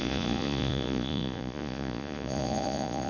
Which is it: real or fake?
fake